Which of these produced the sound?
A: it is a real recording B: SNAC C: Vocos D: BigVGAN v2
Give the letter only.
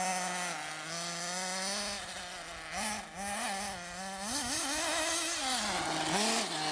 A